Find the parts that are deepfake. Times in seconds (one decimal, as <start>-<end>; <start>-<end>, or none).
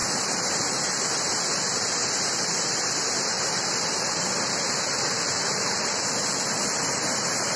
0.0-0.8; 2.0-6.4